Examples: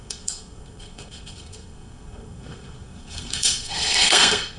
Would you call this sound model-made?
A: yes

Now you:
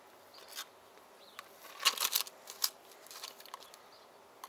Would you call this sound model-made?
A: no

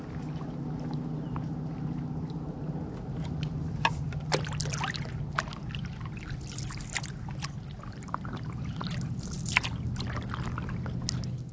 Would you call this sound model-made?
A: no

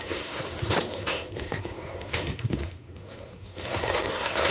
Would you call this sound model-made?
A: yes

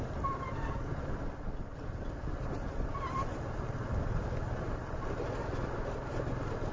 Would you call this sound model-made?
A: no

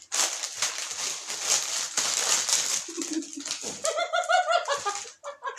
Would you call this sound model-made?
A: no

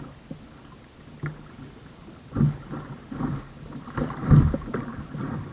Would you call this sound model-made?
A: no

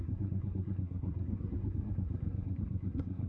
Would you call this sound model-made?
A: yes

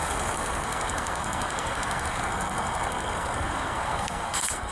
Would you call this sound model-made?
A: yes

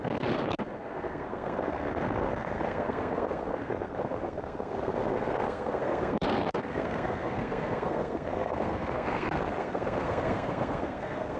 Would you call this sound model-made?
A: yes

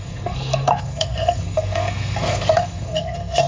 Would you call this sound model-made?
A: yes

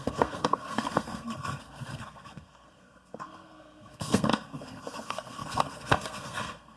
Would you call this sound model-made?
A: yes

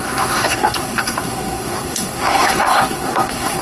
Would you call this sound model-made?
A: yes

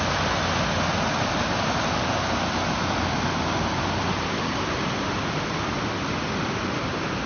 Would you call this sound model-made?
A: no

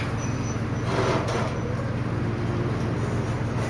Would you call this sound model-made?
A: no